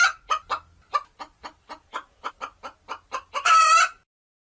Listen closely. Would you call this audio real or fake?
real